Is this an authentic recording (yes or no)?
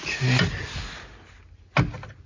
yes